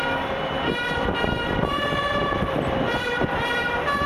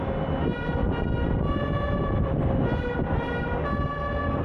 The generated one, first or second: first